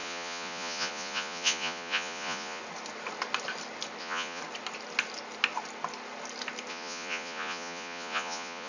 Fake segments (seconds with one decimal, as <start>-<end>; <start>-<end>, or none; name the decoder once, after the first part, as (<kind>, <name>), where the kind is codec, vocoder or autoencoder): 0.0-2.6 (vocoder, Vocos); 4.0-4.4; 6.7-8.7